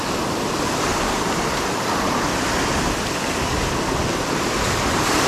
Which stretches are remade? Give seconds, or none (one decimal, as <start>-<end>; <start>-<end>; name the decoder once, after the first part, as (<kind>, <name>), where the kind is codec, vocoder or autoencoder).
none